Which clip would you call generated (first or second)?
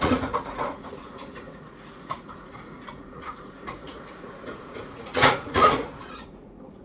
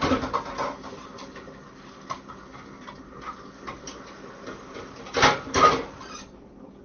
first